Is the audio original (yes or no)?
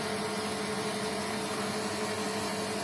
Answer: yes